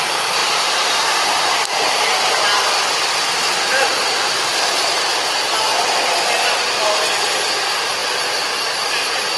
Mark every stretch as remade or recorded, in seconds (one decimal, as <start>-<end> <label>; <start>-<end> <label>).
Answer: 0.0-9.4 recorded